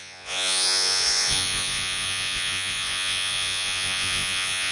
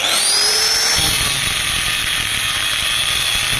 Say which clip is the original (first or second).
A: second